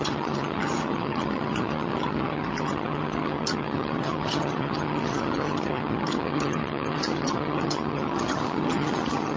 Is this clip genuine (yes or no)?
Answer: no